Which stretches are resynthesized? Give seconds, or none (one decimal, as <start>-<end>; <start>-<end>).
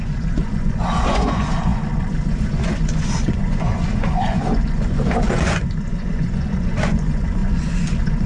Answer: 0.0-8.3